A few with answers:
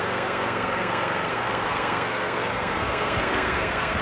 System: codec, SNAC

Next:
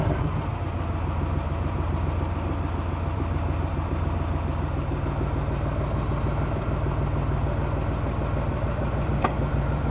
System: vocoder, BigVGAN v2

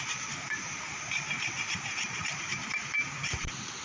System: vocoder, BigVGAN v2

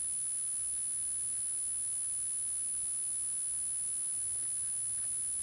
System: none